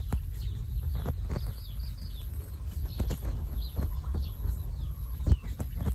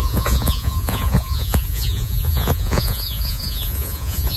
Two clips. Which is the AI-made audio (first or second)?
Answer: second